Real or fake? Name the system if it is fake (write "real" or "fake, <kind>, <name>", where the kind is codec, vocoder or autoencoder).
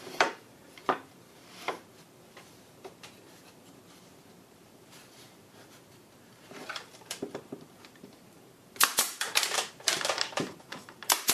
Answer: fake, vocoder, BigVGAN v2